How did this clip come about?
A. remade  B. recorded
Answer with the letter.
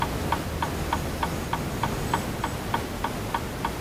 B